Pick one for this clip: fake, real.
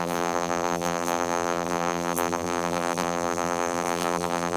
fake